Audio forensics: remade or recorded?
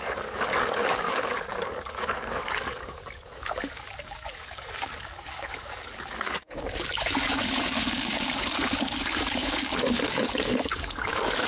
remade